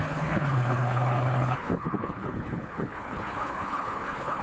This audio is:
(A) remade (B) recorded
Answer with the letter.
A